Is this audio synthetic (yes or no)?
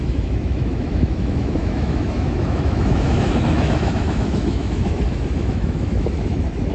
yes